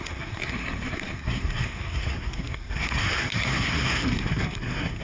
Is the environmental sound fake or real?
fake